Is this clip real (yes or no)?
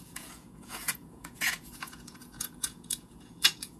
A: no